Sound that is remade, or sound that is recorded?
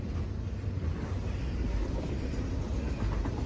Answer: recorded